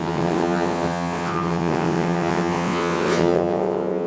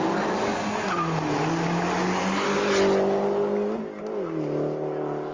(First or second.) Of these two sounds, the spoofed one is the first